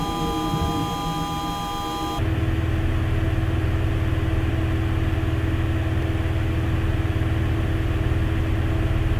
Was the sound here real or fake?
real